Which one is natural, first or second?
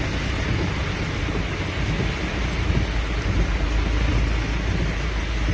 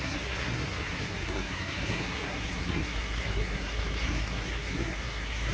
first